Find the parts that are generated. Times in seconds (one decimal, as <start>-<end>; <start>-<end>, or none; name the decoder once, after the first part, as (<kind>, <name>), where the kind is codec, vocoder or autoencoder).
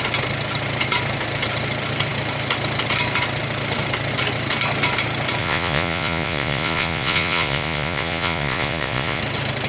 5.4-9.2 (vocoder, Vocos)